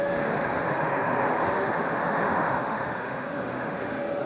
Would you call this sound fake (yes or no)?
yes